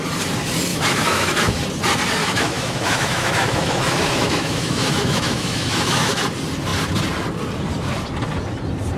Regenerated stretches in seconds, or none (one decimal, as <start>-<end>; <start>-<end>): 0.7-1.6; 2.2-6.2

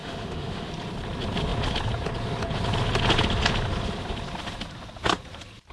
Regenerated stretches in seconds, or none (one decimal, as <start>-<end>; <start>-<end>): 0.0-0.7

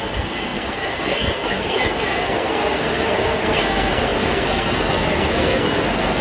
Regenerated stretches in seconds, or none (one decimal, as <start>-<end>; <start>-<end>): 0.0-6.2

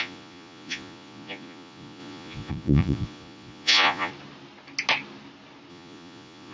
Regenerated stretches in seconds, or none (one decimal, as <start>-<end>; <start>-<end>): 0.0-4.1; 5.7-6.5